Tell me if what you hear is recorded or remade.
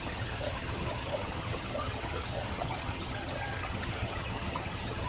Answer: remade